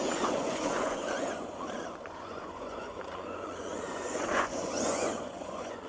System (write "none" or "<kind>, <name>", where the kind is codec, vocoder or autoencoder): vocoder, Vocos